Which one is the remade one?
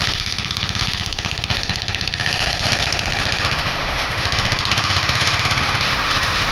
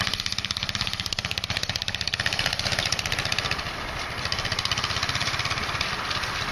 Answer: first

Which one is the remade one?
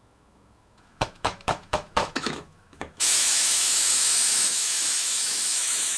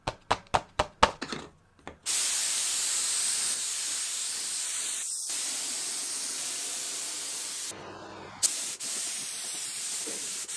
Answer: first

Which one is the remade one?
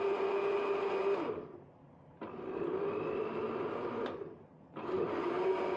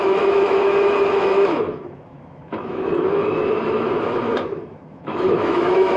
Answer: second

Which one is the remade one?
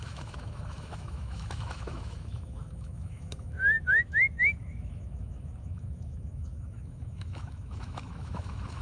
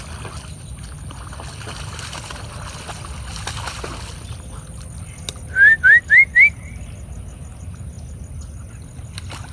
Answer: first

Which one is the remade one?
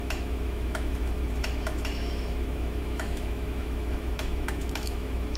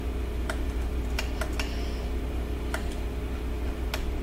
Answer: first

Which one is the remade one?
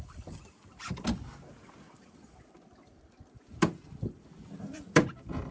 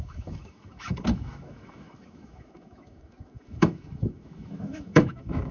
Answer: second